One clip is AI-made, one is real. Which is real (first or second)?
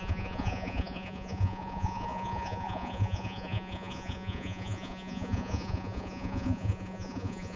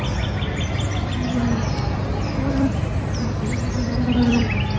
second